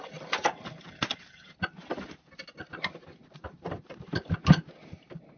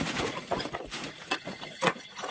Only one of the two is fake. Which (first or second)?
second